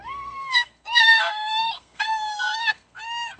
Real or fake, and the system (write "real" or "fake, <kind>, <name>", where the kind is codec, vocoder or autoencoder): fake, codec, SNAC